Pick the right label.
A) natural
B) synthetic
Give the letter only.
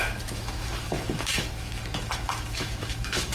B